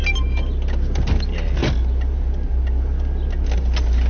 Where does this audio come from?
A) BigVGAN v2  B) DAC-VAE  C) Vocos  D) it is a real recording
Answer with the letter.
D